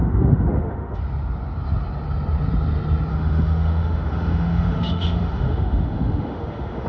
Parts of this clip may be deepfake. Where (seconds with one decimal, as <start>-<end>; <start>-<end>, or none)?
0.0-1.0; 3.1-6.9